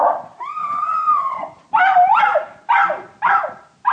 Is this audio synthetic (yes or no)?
no